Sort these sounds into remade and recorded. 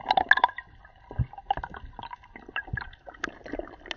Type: recorded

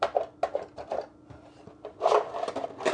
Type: recorded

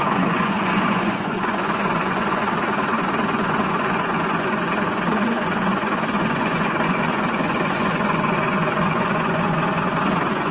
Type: remade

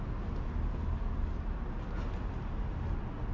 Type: recorded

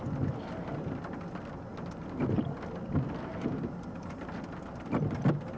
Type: recorded